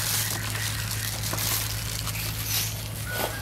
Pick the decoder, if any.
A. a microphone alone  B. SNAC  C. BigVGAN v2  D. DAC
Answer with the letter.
A